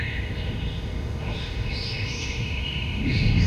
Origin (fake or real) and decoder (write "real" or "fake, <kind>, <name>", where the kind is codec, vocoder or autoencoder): fake, autoencoder, DAC-VAE